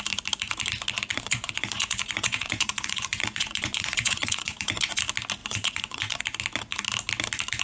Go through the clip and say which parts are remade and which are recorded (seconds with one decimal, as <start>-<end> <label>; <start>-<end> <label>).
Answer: 0.0-1.1 recorded; 1.1-5.0 remade; 5.0-5.4 recorded; 5.4-6.2 remade; 6.2-7.6 recorded